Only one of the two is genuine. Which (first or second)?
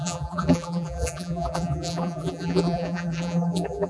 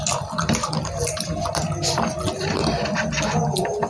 second